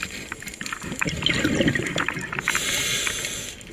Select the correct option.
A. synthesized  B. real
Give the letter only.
B